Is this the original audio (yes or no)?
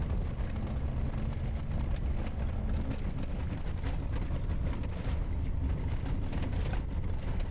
yes